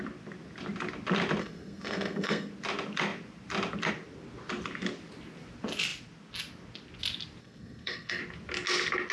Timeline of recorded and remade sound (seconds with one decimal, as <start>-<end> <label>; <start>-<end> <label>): 0.0-1.4 recorded; 1.4-2.5 remade; 2.5-7.4 recorded; 7.4-8.2 remade; 8.2-9.1 recorded